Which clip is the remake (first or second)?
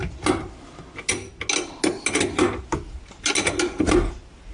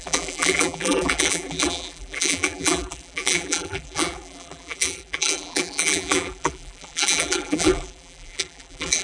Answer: second